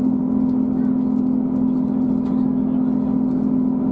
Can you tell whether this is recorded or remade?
recorded